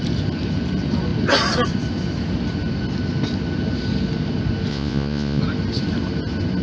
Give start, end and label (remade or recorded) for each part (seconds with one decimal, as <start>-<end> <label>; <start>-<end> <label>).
0.0-4.7 recorded; 4.7-5.4 remade; 5.4-6.6 recorded